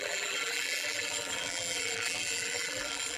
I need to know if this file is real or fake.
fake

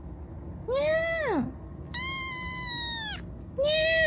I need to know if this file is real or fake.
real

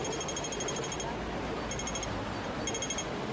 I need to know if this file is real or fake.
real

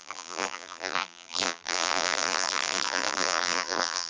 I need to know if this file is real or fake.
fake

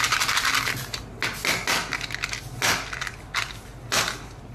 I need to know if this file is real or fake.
real